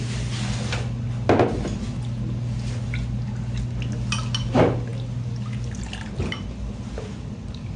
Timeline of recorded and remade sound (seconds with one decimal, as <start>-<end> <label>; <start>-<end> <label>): 0.0-7.8 recorded

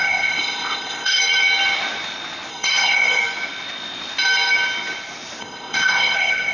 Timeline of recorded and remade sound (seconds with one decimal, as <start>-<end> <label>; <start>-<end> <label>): 0.0-1.2 remade; 1.2-2.5 recorded; 2.5-3.2 remade; 3.2-5.4 recorded; 5.4-6.5 remade

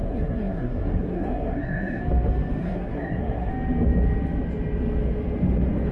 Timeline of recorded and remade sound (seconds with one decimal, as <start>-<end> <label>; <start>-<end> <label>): 0.0-2.0 remade; 2.0-2.6 recorded; 2.6-3.5 remade; 3.5-5.9 recorded